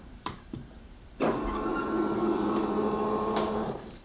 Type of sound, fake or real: fake